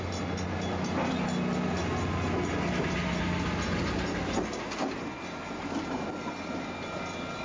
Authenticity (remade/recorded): recorded